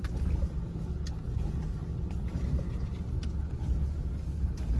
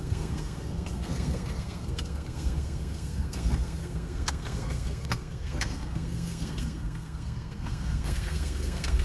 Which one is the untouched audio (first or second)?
first